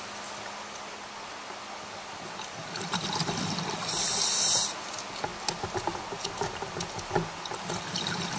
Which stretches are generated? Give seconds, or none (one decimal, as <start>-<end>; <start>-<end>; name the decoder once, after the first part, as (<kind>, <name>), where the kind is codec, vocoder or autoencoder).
none